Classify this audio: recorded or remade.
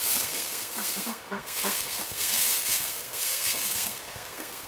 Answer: remade